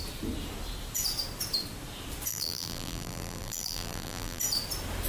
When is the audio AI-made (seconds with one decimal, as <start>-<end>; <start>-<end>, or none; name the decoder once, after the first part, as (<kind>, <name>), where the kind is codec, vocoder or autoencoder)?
2.3-4.4 (vocoder, BigVGAN v2)